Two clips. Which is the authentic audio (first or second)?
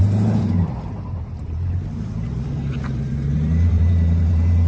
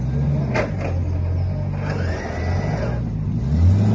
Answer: second